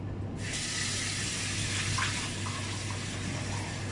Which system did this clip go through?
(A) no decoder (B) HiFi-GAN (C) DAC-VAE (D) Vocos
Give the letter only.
A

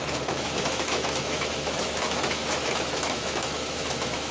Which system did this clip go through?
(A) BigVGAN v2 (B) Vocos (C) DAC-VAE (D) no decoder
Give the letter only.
C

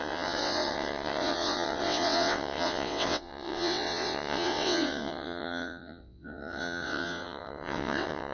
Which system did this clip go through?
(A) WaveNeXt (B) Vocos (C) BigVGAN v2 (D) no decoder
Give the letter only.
A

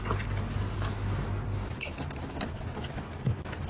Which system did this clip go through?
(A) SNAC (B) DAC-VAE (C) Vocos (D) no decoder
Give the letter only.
D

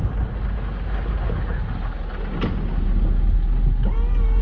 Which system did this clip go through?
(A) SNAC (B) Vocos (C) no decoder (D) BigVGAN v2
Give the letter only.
C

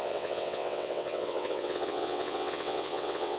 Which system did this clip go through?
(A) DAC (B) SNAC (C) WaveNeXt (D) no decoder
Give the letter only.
C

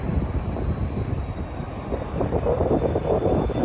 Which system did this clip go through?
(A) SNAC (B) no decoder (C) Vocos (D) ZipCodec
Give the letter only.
B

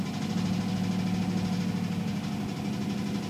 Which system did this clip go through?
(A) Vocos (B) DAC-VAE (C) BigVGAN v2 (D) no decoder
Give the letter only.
D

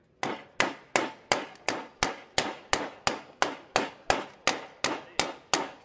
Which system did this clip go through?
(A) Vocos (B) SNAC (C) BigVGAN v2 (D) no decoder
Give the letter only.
D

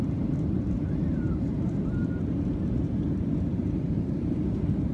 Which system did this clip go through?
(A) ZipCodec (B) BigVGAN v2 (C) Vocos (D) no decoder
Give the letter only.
B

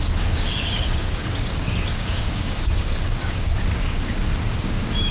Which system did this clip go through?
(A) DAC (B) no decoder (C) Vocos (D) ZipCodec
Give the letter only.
A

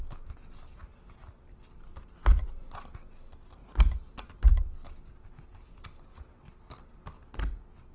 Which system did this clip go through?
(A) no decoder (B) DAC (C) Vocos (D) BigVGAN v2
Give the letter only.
A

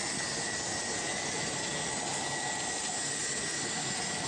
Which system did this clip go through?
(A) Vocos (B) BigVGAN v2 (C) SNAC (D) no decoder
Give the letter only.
D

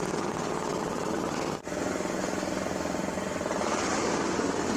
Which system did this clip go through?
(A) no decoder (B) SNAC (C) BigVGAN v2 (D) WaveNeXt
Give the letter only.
A